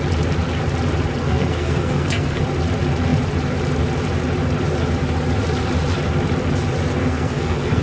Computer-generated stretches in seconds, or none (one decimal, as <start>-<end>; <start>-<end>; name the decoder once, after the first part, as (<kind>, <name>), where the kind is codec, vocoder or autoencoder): 1.2-2.4 (codec, SNAC); 7.0-7.8